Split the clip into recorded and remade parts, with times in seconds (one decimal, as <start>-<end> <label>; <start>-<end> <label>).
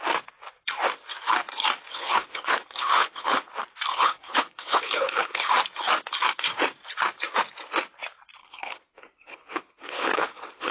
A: 0.0-1.9 recorded; 1.9-3.5 remade; 3.5-3.9 recorded; 3.9-5.5 remade; 5.5-8.4 recorded; 8.4-10.7 remade